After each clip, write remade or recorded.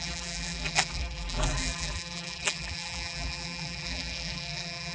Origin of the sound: remade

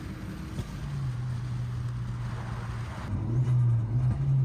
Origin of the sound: recorded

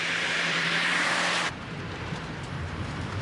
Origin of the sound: remade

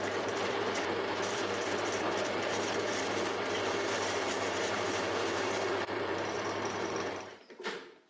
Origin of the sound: remade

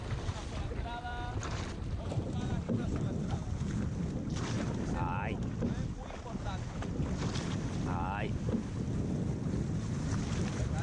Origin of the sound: remade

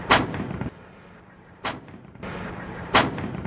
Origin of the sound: remade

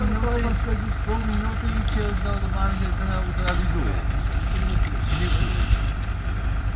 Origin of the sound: recorded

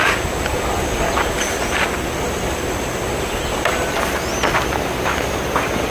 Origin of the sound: recorded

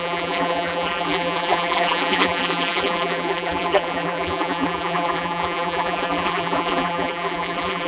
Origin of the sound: remade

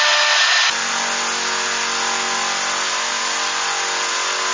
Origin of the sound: recorded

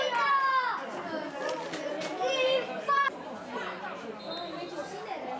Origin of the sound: recorded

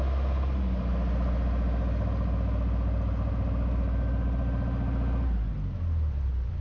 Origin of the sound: recorded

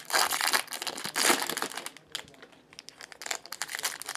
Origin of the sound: recorded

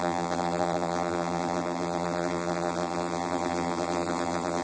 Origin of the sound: remade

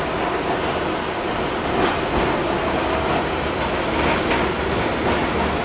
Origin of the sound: recorded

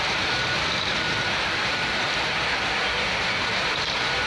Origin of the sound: remade